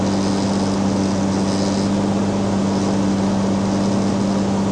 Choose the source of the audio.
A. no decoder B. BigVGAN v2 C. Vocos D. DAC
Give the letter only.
A